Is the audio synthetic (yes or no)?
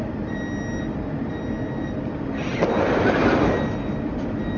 no